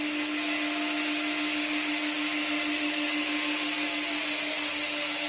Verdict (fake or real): real